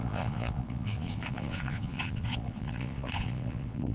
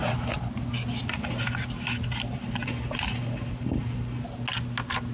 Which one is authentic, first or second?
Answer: second